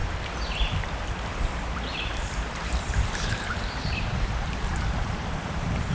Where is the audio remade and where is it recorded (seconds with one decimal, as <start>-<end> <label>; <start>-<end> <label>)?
0.0-5.9 remade